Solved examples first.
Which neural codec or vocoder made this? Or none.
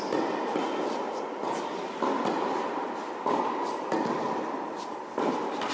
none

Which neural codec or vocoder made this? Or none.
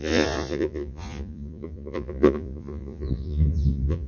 vocoder, Vocos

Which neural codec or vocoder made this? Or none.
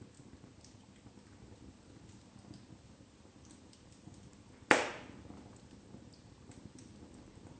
none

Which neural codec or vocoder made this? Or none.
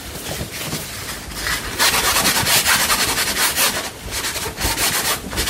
none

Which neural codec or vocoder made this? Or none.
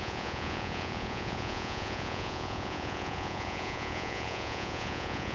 vocoder, Vocos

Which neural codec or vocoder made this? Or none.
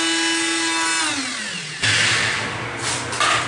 none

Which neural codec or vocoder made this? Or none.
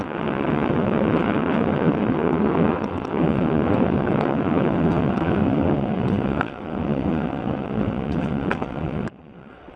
vocoder, WaveNeXt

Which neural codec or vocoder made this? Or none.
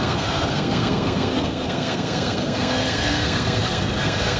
codec, SNAC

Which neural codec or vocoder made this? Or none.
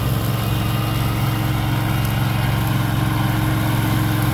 none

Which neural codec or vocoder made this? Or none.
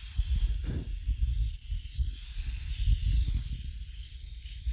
none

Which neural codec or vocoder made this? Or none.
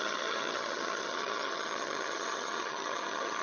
vocoder, HiFi-GAN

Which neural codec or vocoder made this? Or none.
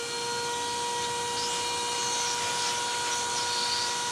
none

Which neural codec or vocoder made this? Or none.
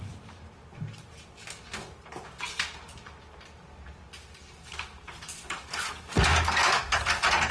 none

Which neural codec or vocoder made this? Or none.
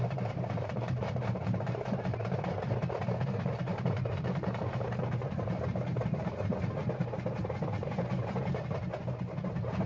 vocoder, BigVGAN v2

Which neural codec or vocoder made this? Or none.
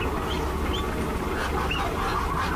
none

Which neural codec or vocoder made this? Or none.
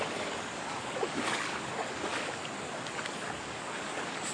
codec, DAC